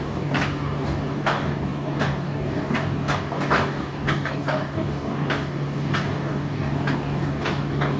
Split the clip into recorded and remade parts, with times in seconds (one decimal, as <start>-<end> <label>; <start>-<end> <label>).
0.0-8.0 remade